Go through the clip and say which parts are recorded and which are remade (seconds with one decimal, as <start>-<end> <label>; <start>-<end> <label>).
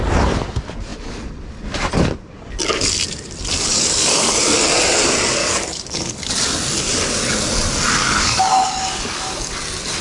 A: 0.0-3.7 recorded; 3.7-4.3 remade; 4.3-5.4 recorded; 5.4-6.3 remade; 6.3-8.0 recorded; 8.0-9.5 remade; 9.5-10.0 recorded